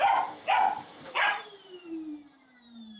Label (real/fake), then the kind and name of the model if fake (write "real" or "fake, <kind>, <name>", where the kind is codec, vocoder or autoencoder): fake, vocoder, BigVGAN v2